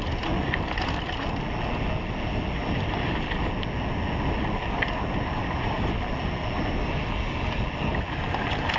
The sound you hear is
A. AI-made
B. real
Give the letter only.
B